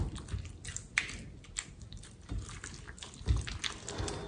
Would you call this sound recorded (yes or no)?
yes